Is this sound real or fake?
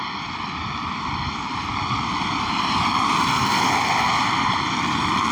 real